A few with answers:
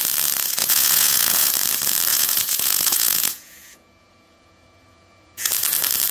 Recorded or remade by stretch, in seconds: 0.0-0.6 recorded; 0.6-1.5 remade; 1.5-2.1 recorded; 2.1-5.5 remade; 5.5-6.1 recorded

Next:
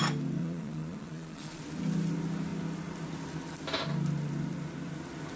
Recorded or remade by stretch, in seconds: 0.0-0.4 recorded; 0.4-1.6 remade; 1.6-5.4 recorded